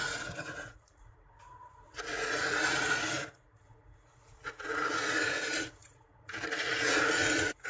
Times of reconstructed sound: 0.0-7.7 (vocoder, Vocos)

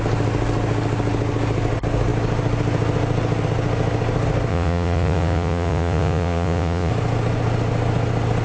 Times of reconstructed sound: 4.5-6.9 (vocoder, Vocos)